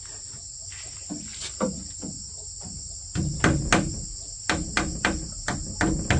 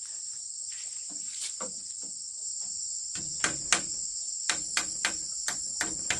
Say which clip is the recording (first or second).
first